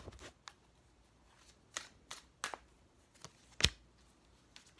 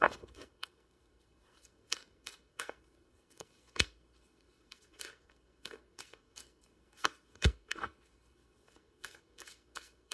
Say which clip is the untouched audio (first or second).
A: first